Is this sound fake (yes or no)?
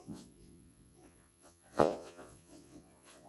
yes